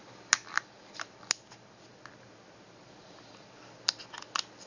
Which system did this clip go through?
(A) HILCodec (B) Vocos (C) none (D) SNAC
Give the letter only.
C